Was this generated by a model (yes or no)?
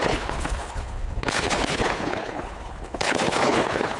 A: yes